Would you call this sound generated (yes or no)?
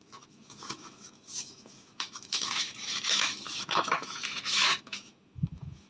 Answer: yes